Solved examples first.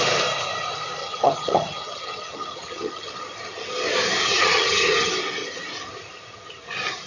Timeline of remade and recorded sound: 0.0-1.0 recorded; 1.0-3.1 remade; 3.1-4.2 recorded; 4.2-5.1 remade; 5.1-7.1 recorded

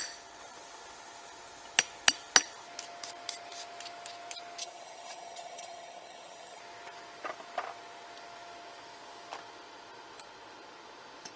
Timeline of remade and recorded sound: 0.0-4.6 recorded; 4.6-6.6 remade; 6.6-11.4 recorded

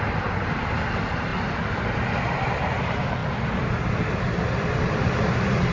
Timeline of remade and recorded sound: 0.0-5.7 recorded